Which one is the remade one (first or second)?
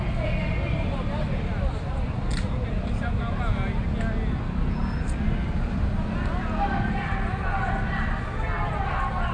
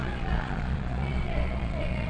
second